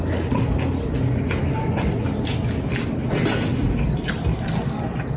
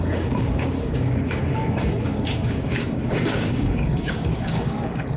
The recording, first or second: first